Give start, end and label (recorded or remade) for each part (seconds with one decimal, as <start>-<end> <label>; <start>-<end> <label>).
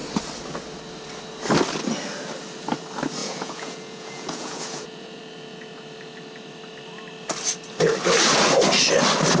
0.0-3.2 recorded; 3.2-5.2 remade; 5.2-9.4 recorded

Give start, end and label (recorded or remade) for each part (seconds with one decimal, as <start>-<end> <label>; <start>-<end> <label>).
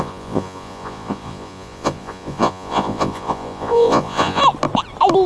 0.0-4.4 remade; 4.4-5.3 recorded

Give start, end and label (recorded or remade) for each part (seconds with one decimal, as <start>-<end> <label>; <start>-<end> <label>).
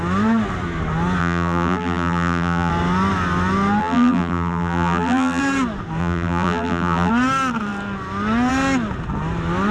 0.0-1.2 recorded; 1.2-2.7 remade; 2.7-3.8 recorded; 3.8-5.4 remade; 5.4-6.0 recorded; 6.0-7.1 remade; 7.1-9.7 recorded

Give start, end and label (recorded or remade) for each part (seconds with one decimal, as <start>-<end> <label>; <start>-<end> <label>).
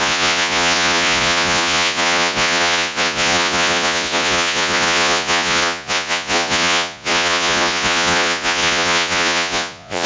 0.0-10.1 remade